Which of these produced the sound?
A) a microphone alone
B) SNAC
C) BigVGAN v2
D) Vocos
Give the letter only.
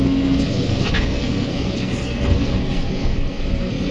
B